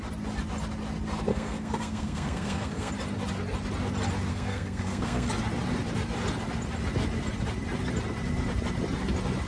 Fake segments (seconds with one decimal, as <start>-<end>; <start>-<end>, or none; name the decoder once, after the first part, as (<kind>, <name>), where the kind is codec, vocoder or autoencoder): 1.3-2.9 (codec, SNAC); 4.3-5.3